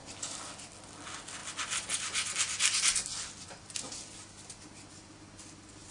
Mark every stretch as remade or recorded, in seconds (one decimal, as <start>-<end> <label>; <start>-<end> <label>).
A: 0.0-5.9 recorded